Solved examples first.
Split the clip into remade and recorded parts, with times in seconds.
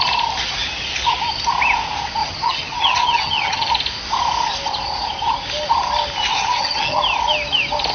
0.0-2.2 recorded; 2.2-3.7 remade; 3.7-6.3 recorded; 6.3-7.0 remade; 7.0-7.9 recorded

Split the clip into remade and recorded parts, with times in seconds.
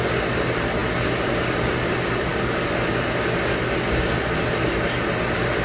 0.0-5.6 recorded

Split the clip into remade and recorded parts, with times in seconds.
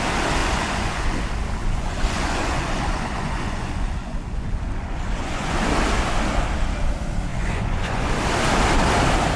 0.0-0.4 recorded; 0.4-1.2 remade; 1.2-1.6 recorded; 1.6-5.6 remade; 5.6-7.3 recorded; 7.3-8.1 remade; 8.1-9.4 recorded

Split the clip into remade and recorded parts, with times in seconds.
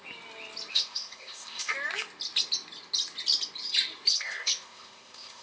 0.0-0.7 recorded; 0.7-1.7 remade; 1.7-4.1 recorded; 4.1-5.4 remade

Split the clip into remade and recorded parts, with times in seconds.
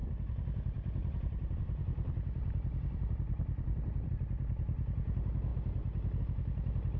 0.0-4.1 remade; 4.1-7.0 recorded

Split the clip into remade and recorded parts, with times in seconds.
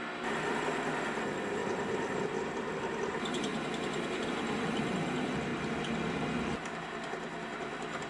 0.0-1.6 recorded; 1.6-2.8 remade; 2.8-3.5 recorded; 3.5-4.9 remade; 4.9-5.5 recorded; 5.5-6.2 remade; 6.2-8.1 recorded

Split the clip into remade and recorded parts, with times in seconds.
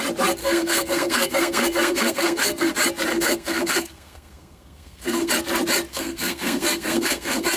0.0-0.4 recorded; 0.4-2.7 remade; 2.7-3.1 recorded; 3.1-5.3 remade; 5.3-5.9 recorded; 5.9-7.6 remade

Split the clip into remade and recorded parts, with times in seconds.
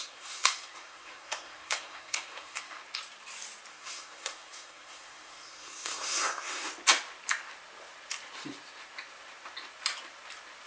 0.0-2.8 remade; 2.8-3.7 recorded; 3.7-6.7 remade; 6.7-10.7 recorded